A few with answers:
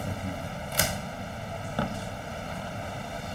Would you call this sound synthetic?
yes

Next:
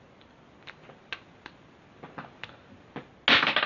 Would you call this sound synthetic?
no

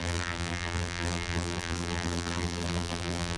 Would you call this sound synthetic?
yes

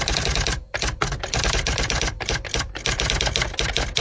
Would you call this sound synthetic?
no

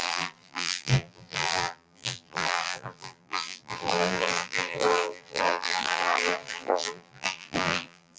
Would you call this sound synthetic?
yes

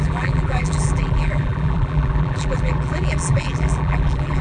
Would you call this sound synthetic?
yes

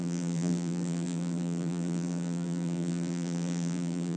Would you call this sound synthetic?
yes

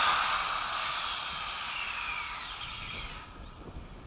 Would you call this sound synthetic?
yes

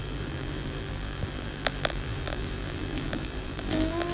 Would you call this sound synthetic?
yes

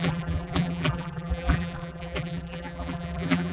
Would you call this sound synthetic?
yes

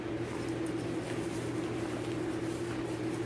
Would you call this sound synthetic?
no